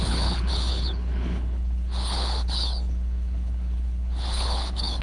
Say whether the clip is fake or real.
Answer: fake